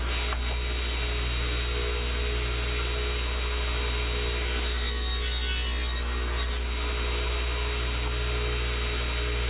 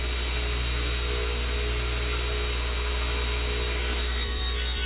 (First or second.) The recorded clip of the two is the first